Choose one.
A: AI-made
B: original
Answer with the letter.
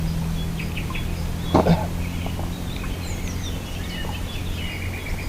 B